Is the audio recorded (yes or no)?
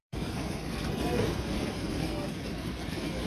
no